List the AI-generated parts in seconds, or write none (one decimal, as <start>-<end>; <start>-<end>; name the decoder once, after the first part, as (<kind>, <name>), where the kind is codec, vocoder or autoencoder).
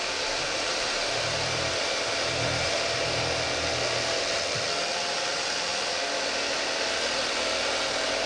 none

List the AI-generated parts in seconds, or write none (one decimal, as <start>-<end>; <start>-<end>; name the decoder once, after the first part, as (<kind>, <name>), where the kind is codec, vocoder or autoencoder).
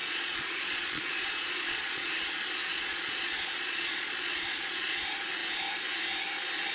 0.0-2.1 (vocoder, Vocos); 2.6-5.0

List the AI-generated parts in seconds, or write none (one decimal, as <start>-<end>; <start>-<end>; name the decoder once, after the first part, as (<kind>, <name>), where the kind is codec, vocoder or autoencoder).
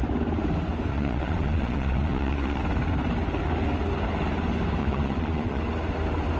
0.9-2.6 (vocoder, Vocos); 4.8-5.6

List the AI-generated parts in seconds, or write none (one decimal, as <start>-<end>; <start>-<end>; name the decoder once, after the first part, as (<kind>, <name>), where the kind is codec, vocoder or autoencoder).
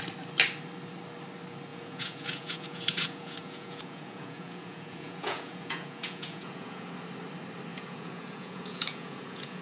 1.7-6.9 (vocoder, Vocos); 7.7-9.6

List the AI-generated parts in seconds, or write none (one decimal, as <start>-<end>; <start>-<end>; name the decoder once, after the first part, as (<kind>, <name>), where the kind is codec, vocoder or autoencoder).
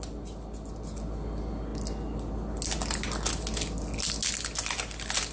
none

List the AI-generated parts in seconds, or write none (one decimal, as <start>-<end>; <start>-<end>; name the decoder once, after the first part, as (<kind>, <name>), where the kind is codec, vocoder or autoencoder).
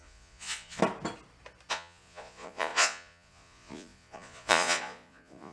0.0-0.8 (vocoder, Vocos); 1.7-5.5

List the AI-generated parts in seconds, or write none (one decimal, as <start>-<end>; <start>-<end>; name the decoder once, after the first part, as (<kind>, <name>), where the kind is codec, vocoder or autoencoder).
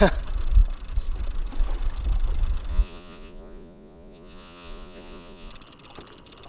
2.7-5.5 (vocoder, Vocos)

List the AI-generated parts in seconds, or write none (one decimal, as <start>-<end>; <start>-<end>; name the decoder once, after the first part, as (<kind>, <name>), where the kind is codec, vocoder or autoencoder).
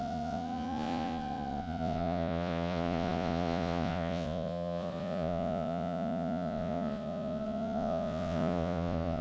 0.0-9.2 (vocoder, Vocos)